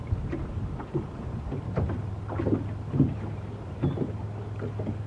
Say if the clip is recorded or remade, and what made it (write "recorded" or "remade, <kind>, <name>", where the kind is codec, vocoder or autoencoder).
recorded